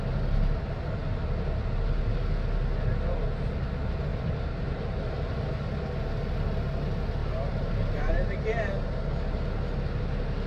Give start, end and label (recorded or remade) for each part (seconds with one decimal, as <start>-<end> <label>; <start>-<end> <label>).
0.0-4.1 recorded; 4.1-5.4 remade; 5.4-7.2 recorded; 7.2-8.1 remade; 8.1-10.5 recorded